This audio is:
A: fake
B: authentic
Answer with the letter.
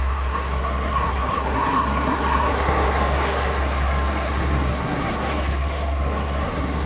A